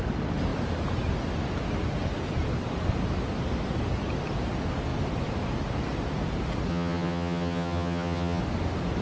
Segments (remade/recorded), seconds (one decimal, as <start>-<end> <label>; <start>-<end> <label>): 0.0-6.7 recorded; 6.7-8.4 remade; 8.4-9.0 recorded